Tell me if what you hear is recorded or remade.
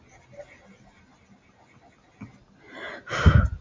recorded